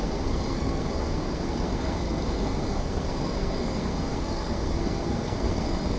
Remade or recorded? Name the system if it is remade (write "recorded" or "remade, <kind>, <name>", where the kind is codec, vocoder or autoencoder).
remade, codec, SNAC